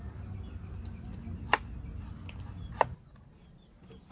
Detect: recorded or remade recorded